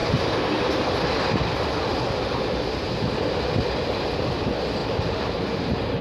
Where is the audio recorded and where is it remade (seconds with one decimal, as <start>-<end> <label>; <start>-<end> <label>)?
0.0-0.6 remade; 0.6-4.8 recorded; 4.8-5.4 remade; 5.4-6.0 recorded